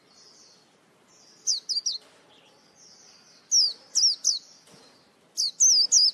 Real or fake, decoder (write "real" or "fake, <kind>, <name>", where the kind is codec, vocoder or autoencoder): real